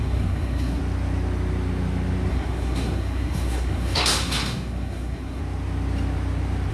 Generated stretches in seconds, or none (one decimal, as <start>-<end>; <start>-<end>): 0.0-0.8; 2.3-5.4